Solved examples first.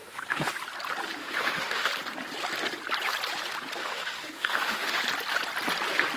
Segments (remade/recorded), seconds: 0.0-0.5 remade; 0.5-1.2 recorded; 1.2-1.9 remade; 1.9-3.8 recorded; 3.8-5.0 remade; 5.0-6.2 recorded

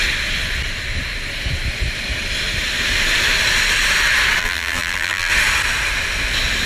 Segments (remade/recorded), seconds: 0.0-4.4 recorded; 4.4-5.3 remade; 5.3-6.7 recorded

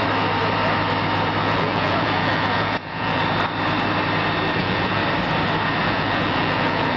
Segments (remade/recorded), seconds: 0.0-1.4 recorded; 1.4-3.2 remade; 3.2-4.6 recorded; 4.6-5.0 remade; 5.0-5.8 recorded; 5.8-7.0 remade

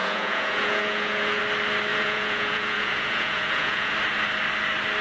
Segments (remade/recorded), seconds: 0.0-1.4 remade; 1.4-1.9 recorded; 1.9-3.9 remade; 3.9-5.0 recorded

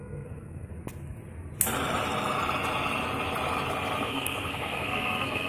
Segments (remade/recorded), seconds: 0.0-0.7 remade; 0.7-4.0 recorded; 4.0-5.5 remade